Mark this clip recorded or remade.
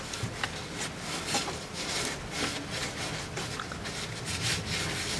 recorded